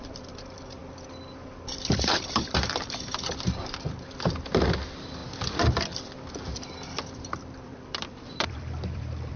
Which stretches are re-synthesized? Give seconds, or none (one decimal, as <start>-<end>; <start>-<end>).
0.0-0.8; 1.5-9.4